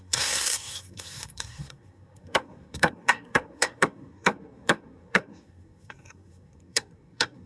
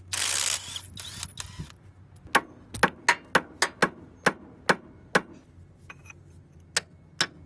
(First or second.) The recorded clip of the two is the second